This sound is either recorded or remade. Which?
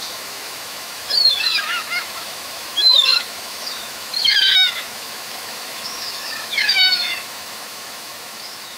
remade